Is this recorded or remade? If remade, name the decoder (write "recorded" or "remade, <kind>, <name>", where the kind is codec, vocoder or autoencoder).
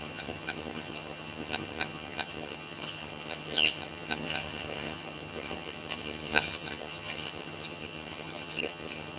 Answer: remade, vocoder, HiFi-GAN